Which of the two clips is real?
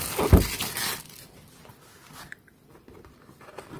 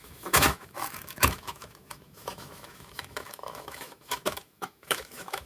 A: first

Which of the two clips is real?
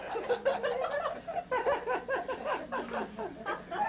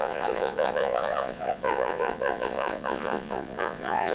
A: first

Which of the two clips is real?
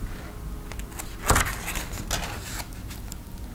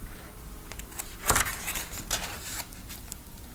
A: first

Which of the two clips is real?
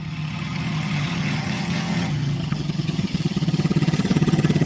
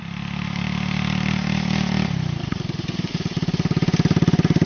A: second